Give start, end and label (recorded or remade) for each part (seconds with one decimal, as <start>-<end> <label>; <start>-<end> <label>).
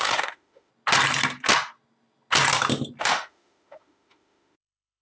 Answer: 0.0-0.7 remade; 0.7-3.0 recorded; 3.0-5.0 remade